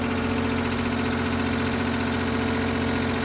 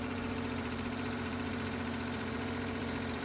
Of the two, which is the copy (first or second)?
second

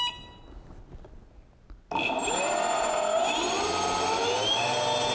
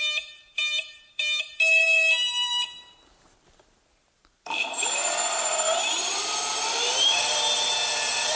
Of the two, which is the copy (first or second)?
second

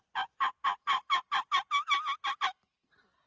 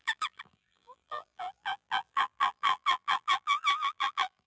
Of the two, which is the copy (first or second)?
second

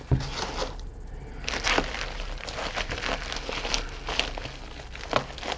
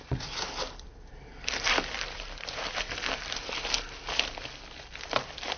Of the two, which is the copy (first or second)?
second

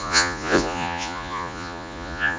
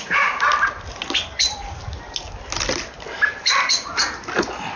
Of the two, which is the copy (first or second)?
first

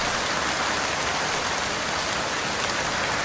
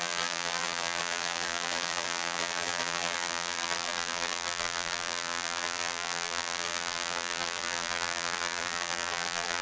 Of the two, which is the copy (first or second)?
second